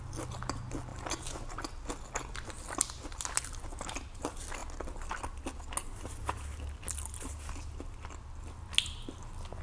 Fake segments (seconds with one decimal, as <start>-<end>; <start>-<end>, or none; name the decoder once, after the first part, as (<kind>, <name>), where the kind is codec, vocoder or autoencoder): none